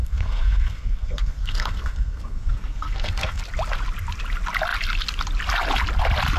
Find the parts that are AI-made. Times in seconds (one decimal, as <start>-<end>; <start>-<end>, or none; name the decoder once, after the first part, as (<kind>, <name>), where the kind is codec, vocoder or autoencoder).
0.0-3.4 (codec, SNAC)